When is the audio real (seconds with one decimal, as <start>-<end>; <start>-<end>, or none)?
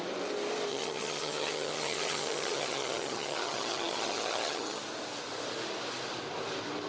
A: 0.0-0.7; 4.8-6.9